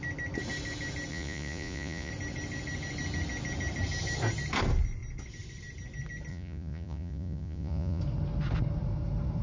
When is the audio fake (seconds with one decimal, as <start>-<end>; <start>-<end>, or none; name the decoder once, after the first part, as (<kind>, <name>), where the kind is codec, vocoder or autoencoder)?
1.1-2.1 (vocoder, Vocos); 6.3-8.0